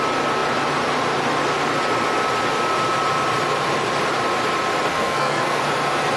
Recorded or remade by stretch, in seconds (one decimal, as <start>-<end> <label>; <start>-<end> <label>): 0.0-4.9 recorded; 4.9-5.6 remade; 5.6-6.2 recorded